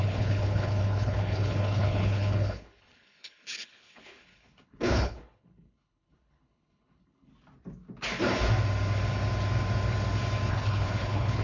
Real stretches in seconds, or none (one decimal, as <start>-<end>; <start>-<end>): 7.3-10.5